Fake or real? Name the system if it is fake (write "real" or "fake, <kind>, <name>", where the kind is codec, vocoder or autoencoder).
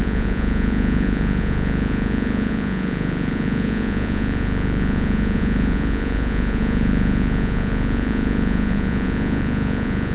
fake, vocoder, Vocos